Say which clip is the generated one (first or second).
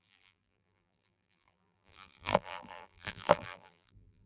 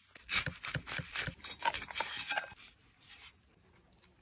first